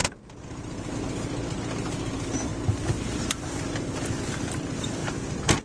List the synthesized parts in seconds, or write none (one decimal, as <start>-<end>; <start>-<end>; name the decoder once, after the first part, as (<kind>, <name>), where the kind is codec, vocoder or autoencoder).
none